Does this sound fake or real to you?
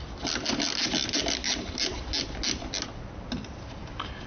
real